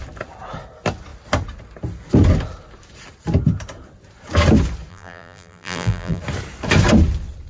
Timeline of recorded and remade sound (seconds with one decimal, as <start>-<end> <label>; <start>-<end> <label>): 0.0-4.9 recorded; 4.9-6.2 remade; 6.2-7.5 recorded